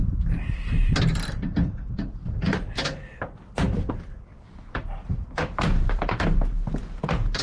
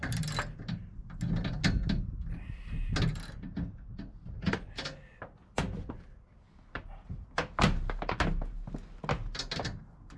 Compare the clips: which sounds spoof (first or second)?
first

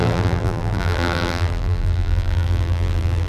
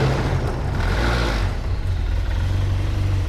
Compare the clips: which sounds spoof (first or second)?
first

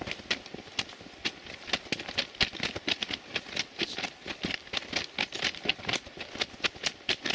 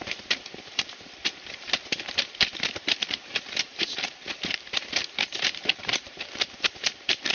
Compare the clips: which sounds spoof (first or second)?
second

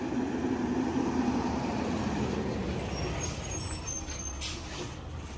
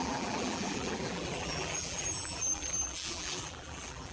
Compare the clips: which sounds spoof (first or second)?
second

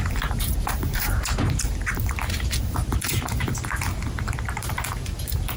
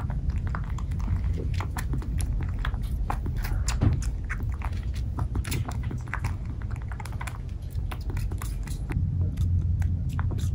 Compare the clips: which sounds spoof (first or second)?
first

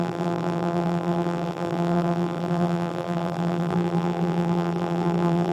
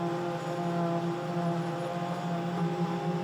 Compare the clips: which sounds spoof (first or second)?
first